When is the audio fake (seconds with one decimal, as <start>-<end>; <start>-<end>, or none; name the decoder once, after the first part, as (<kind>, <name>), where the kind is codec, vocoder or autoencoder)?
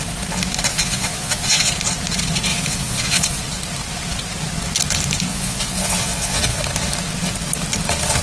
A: 0.7-1.7 (vocoder, Vocos); 2.5-3.4; 5.3-6.6